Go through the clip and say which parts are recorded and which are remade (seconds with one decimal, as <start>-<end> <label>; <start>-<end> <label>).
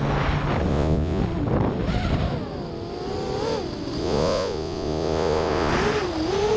0.0-0.7 recorded; 0.7-1.2 remade; 1.2-4.0 recorded; 4.0-5.7 remade; 5.7-6.6 recorded